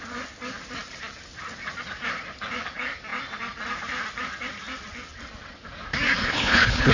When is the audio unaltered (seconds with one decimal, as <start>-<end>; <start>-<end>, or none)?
0.0-6.2